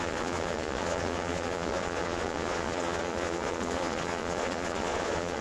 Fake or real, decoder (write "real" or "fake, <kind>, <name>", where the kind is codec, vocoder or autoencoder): fake, vocoder, Vocos